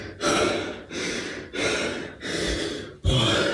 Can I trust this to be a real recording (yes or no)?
yes